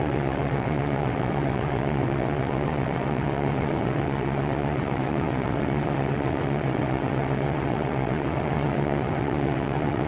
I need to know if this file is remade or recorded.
remade